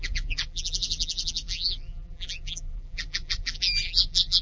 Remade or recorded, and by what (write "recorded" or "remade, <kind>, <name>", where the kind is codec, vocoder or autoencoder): remade, vocoder, BigVGAN v2